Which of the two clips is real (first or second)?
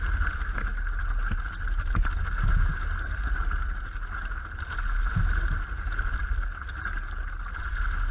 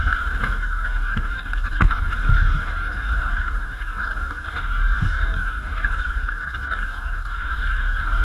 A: first